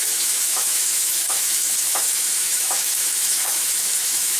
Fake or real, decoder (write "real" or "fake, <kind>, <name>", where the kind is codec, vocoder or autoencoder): fake, autoencoder, DAC-VAE